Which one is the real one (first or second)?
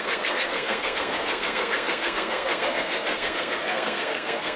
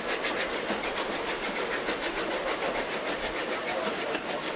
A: second